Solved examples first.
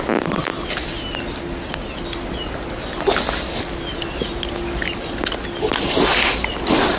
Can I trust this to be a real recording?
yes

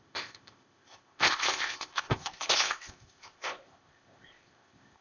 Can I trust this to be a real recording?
no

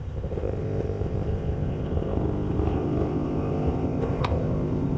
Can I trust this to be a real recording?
no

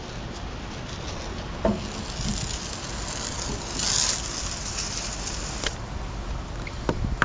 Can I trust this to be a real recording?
yes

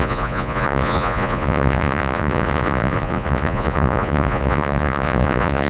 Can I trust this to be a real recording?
no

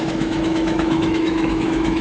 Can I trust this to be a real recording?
no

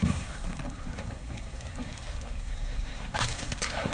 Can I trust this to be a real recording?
no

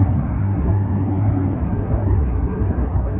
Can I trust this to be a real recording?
no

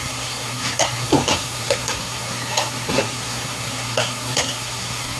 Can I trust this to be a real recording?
no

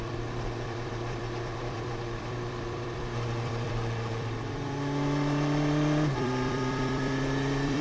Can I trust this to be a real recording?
no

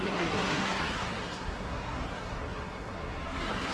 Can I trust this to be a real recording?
no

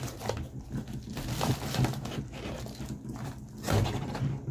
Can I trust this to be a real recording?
yes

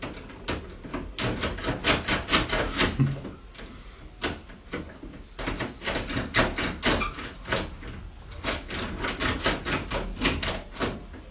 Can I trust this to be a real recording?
yes